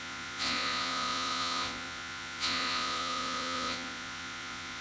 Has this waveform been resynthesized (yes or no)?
yes